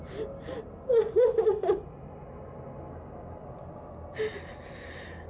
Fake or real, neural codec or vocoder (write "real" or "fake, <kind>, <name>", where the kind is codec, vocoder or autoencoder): real